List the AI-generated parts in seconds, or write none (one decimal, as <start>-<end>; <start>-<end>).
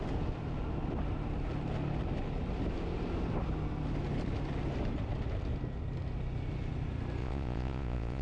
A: 7.2-8.2